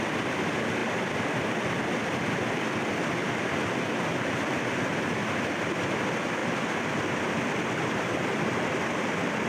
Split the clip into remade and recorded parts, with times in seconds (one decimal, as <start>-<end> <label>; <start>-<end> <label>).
0.0-9.5 recorded